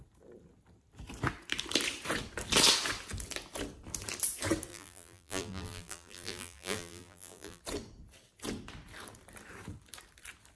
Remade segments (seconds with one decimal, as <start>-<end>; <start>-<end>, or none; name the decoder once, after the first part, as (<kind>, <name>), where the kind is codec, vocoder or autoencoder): 4.7-7.6 (vocoder, BigVGAN v2)